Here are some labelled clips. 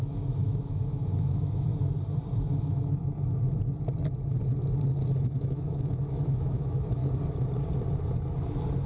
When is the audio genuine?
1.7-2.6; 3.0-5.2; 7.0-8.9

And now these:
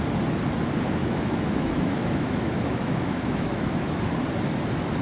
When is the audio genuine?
0.0-1.0; 4.0-5.0

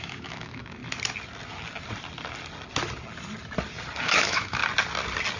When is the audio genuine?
0.8-4.0; 4.6-5.4

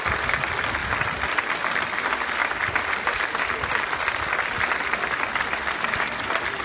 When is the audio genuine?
0.0-6.6

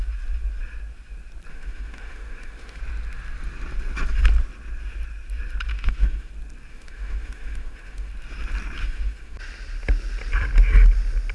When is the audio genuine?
0.0-1.5; 2.8-5.7; 6.3-6.7; 8.1-8.8; 9.4-11.3

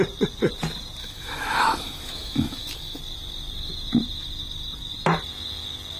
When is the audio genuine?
0.0-1.0; 3.0-6.0

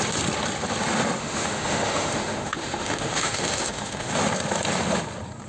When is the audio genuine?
0.0-1.2; 4.1-5.5